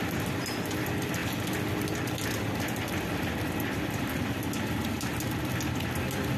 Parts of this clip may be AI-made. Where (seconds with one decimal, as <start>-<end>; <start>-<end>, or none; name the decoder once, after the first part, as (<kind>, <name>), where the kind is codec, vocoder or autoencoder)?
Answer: none